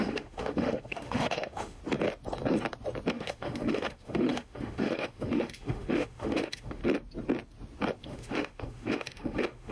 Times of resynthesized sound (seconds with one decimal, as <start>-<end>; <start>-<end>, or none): 0.0-1.8; 3.1-6.8; 8.0-9.7